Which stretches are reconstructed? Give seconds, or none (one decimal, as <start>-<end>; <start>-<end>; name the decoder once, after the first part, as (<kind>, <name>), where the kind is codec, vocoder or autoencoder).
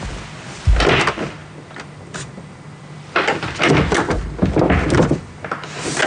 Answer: none